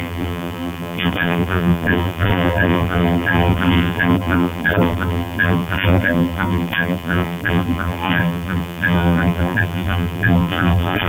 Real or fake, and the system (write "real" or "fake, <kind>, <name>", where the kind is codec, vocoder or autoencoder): fake, vocoder, BigVGAN v2